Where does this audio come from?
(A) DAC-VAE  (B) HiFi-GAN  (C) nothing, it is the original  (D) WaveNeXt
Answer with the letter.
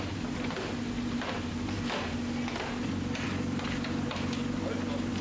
C